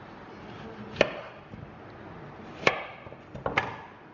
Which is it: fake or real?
real